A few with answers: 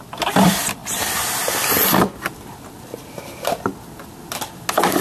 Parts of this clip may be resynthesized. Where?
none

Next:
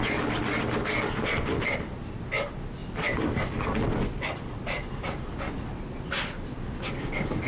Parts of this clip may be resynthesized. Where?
2.8-6.5 (vocoder, BigVGAN v2)

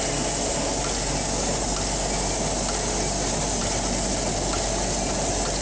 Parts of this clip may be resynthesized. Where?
none

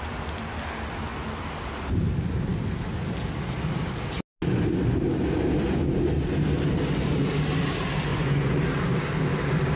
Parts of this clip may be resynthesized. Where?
8.1-8.6 (vocoder, Vocos)